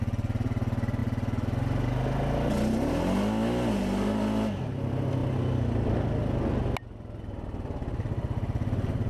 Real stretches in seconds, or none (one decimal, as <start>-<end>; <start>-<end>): 0.0-9.1